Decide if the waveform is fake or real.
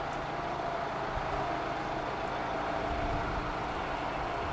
real